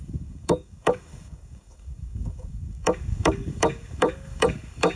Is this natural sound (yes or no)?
no